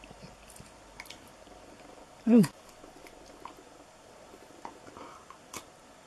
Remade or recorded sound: recorded